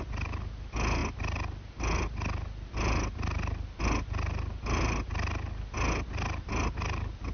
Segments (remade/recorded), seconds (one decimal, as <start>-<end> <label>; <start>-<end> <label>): 0.0-7.3 recorded